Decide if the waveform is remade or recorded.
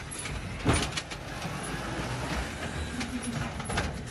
recorded